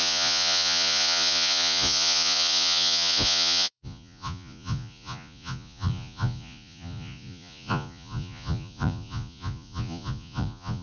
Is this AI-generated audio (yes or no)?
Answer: yes